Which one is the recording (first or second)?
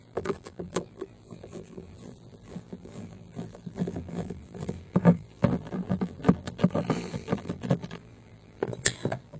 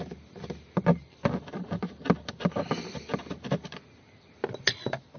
second